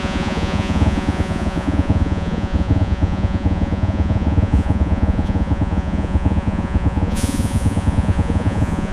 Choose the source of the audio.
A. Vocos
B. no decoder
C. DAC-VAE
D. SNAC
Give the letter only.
A